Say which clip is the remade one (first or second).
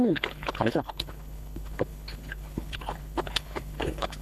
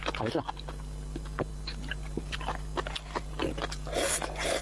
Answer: first